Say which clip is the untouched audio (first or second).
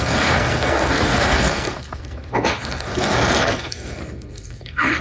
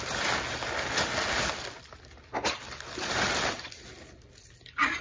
second